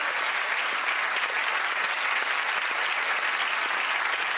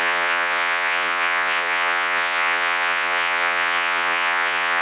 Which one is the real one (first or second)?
first